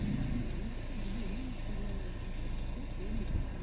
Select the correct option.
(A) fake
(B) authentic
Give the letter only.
B